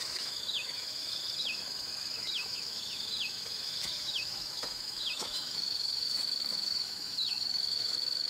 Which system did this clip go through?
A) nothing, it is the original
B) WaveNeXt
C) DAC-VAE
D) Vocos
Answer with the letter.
C